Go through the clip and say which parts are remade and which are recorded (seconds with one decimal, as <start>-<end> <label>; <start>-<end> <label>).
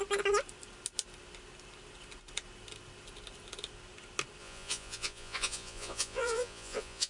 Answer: 0.0-4.4 recorded; 4.4-7.1 remade